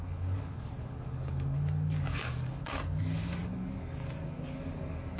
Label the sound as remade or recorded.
remade